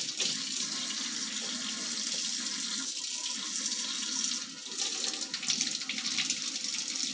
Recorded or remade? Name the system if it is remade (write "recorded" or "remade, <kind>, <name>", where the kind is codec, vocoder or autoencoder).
recorded